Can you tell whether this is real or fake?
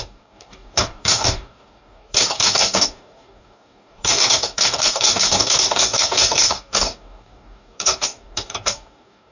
fake